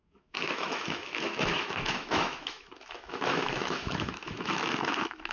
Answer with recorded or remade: remade